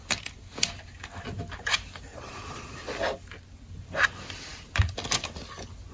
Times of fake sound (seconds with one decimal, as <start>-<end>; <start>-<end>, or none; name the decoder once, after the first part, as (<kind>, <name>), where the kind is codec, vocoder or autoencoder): 2.1-2.9 (vocoder, Vocos)